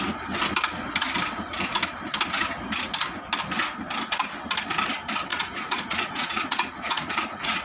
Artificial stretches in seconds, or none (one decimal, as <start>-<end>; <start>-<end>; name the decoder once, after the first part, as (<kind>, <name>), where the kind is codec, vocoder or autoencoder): 5.3-7.6 (vocoder, Vocos)

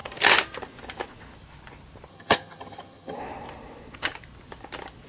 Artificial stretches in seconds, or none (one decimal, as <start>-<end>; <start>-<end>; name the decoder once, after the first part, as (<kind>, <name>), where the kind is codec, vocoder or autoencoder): 2.1-3.2 (vocoder, HiFi-GAN)

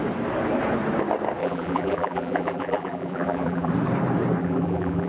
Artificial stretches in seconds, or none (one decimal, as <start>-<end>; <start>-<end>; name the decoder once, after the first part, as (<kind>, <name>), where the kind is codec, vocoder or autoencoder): 1.4-3.7 (vocoder, BigVGAN v2); 4.4-5.1

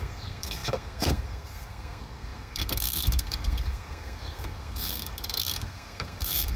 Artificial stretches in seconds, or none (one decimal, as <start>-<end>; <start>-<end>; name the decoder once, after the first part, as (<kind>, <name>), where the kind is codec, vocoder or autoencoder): 0.0-6.6 (codec, SNAC)

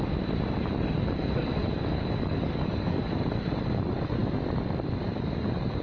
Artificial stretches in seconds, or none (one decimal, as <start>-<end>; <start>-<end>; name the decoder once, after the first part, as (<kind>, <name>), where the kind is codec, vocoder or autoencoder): 1.6-3.0 (codec, DAC)

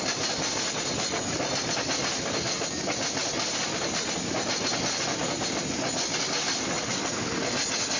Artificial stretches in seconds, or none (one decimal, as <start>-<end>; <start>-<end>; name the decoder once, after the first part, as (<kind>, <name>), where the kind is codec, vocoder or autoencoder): none